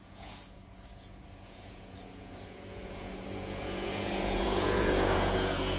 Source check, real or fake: fake